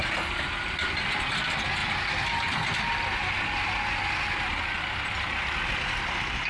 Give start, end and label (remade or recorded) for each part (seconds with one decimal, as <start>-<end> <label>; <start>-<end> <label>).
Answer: 0.0-6.5 recorded